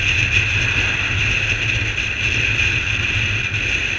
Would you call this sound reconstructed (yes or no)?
no